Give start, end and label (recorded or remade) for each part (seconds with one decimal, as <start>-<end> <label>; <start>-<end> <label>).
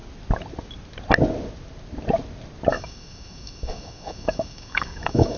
0.0-2.7 recorded; 2.7-5.4 remade